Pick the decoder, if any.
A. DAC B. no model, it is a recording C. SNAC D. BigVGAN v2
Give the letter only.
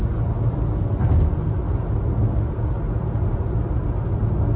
B